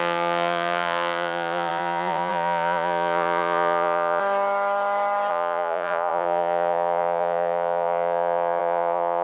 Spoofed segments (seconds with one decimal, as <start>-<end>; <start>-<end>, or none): 0.0-4.2; 5.3-9.2